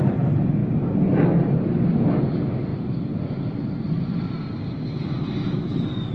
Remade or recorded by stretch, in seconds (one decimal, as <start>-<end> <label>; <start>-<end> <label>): 0.0-6.1 recorded